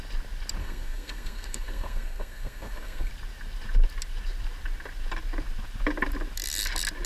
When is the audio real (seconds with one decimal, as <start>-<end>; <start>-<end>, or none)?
0.0-0.6; 3.1-7.1